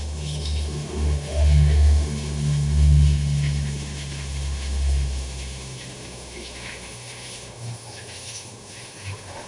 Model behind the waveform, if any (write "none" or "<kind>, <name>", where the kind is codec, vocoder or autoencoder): autoencoder, DAC-VAE